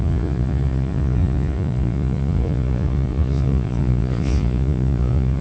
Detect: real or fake fake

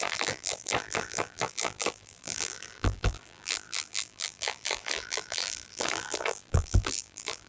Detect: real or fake fake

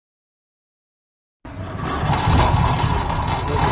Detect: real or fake real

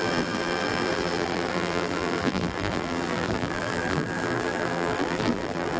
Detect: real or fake fake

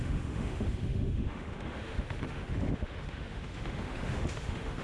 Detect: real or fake fake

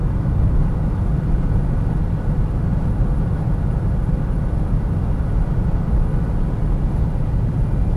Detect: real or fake real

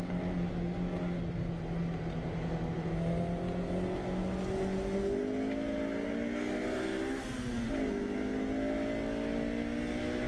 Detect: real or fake real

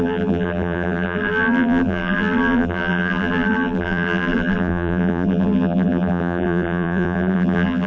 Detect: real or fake fake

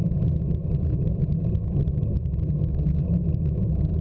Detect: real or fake real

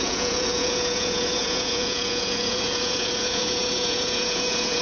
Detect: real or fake fake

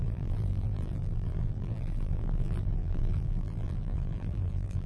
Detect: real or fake fake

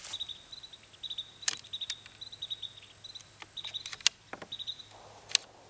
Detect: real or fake real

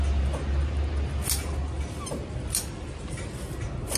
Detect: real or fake real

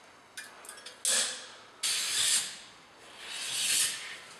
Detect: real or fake real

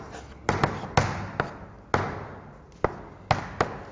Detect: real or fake real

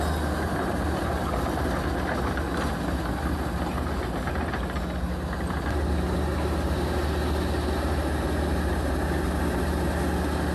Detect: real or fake real